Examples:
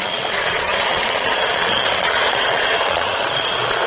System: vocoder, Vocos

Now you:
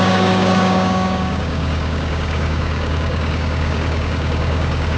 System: codec, DAC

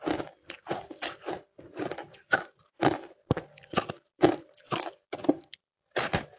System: none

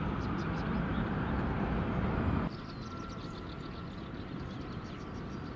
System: none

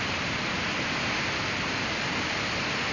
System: none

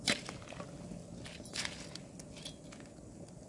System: none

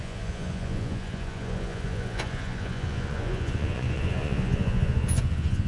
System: vocoder, Vocos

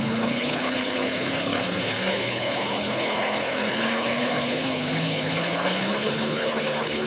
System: codec, HILCodec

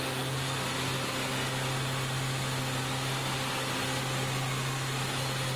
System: none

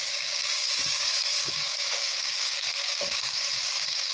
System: codec, DAC